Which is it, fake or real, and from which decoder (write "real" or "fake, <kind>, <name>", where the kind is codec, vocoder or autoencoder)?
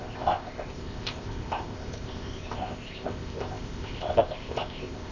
fake, codec, ZipCodec